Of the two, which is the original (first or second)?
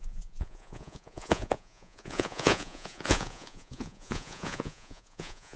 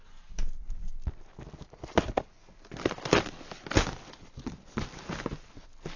second